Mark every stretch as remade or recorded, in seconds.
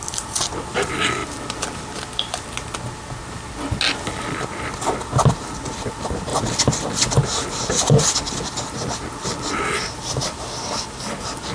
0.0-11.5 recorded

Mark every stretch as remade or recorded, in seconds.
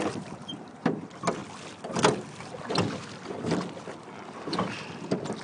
0.0-5.4 recorded